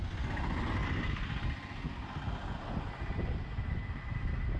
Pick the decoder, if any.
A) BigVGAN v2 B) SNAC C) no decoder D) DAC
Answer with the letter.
C